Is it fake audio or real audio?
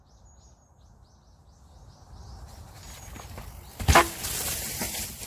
real